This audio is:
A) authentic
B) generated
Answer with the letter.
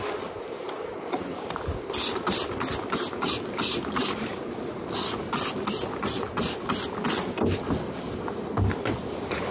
A